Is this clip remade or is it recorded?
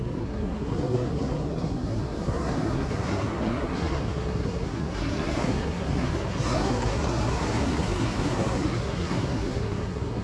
remade